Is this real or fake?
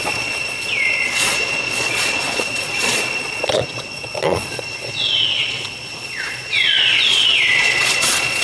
fake